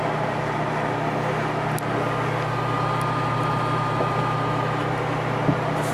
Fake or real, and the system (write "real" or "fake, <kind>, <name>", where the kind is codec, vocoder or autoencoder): real